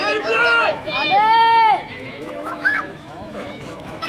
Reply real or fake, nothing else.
fake